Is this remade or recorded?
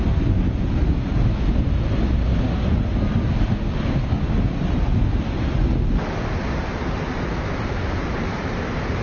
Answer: recorded